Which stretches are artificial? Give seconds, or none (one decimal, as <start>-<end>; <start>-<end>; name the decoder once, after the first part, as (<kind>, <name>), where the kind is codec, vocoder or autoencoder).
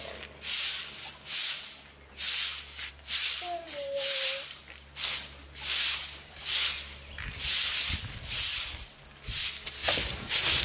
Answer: 2.8-4.6 (vocoder, BigVGAN v2)